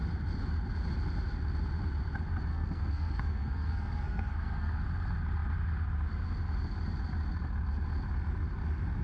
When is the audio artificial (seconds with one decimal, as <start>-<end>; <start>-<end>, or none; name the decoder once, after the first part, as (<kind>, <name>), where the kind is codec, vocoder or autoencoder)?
2.5-4.8 (codec, SNAC)